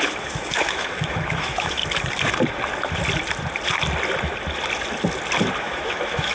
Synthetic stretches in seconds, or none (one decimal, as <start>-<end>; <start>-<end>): 0.0-1.8; 5.6-6.3